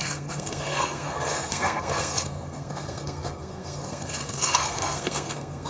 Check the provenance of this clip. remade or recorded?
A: remade